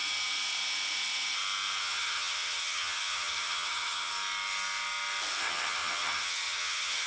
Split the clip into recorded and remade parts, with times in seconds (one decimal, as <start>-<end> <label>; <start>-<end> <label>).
0.0-1.8 recorded; 1.8-4.1 remade; 4.1-5.4 recorded; 5.4-7.1 remade